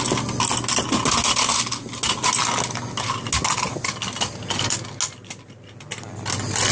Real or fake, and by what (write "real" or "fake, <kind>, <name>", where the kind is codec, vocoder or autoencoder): real